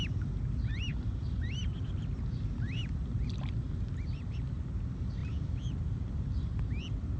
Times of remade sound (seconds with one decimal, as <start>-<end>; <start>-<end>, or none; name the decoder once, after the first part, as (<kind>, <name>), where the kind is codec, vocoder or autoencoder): 0.9-1.8 (vocoder, BigVGAN v2); 5.2-6.2